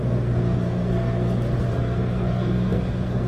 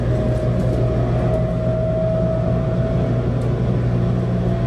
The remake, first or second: first